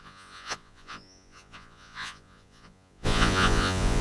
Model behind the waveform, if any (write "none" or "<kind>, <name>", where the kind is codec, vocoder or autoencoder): vocoder, Vocos